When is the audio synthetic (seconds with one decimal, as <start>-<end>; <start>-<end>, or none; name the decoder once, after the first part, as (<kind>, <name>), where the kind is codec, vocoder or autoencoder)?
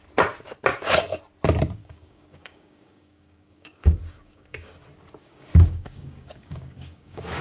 0.7-1.2 (codec, DAC); 1.8-4.8; 5.2-7.4